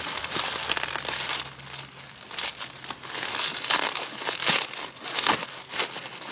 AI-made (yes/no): no